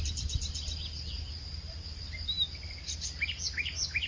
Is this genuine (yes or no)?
yes